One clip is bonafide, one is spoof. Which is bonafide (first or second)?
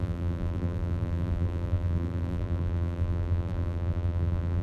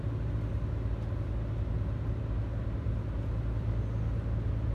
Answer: second